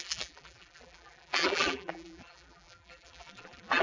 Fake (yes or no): yes